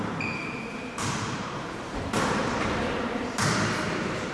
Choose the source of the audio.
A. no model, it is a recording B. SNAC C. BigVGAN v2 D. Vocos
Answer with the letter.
C